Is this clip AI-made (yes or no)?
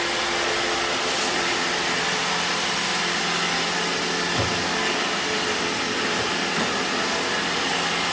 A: no